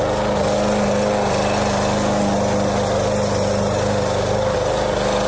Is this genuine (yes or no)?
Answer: yes